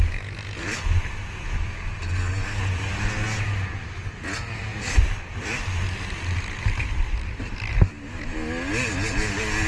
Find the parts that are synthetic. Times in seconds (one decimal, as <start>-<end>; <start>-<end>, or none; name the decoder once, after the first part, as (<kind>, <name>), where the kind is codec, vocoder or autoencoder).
none